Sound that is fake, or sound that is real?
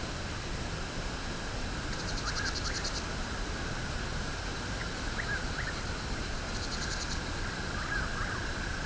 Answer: real